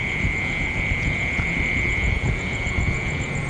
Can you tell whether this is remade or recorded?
remade